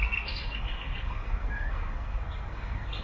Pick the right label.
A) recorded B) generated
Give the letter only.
B